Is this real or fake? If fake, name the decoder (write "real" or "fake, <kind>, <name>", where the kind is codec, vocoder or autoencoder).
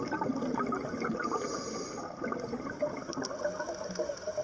real